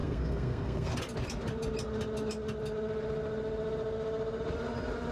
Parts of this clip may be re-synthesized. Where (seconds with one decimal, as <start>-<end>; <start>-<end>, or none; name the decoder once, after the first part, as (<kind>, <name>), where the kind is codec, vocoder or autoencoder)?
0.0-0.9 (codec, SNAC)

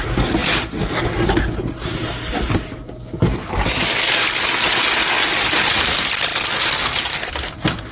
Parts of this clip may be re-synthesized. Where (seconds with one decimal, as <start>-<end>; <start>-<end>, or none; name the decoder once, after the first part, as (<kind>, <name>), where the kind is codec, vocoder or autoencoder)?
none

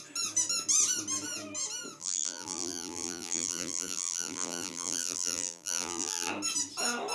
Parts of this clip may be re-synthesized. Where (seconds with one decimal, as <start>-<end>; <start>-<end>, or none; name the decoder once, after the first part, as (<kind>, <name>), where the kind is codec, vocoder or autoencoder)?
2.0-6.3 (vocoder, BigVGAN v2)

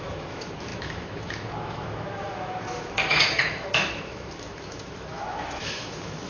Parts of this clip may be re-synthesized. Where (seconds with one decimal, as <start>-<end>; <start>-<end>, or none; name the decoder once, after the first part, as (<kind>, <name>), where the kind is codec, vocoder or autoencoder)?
0.0-6.3 (autoencoder, DAC-VAE)

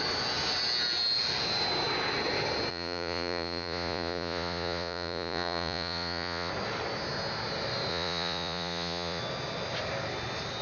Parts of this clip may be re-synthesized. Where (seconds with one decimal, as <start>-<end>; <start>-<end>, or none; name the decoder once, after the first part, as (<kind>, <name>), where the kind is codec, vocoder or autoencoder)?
2.7-6.5 (vocoder, Vocos); 7.9-9.2

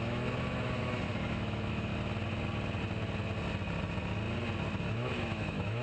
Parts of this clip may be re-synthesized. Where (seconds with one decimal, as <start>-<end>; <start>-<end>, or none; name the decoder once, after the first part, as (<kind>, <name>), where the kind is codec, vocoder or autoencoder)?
0.0-1.9 (autoencoder, DAC-VAE); 4.8-5.8

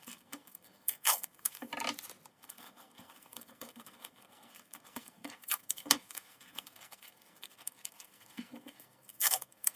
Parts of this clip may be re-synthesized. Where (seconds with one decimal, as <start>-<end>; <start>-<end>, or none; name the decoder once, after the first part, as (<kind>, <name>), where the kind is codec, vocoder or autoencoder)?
0.0-1.7 (codec, SNAC); 2.3-9.8